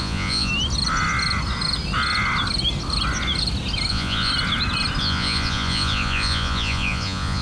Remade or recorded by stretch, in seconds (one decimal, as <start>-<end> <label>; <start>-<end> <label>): 0.0-0.5 remade; 0.5-3.9 recorded; 3.9-4.3 remade; 4.3-5.0 recorded; 5.0-7.4 remade